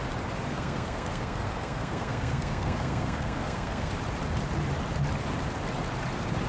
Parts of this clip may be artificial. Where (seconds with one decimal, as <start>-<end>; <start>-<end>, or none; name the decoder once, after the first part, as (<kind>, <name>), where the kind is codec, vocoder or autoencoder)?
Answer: 0.5-3.9 (codec, SNAC)